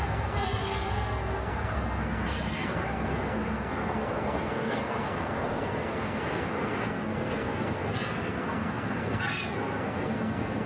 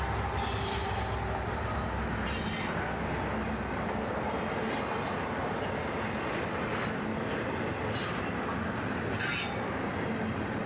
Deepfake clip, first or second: first